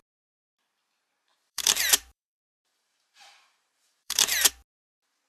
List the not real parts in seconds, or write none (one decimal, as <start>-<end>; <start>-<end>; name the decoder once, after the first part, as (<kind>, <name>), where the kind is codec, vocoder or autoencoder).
1.3-4.5 (vocoder, BigVGAN v2)